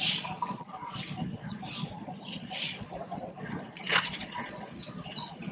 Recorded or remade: remade